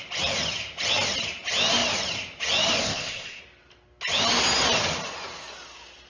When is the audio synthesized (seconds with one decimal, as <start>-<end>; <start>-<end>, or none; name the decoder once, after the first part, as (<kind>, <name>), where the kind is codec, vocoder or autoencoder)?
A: 2.8-3.4 (codec, ZipCodec)